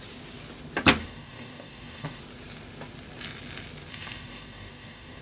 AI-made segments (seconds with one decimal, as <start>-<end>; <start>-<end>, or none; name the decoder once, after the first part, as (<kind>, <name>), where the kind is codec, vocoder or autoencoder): 1.0-2.2 (codec, DAC); 3.9-5.2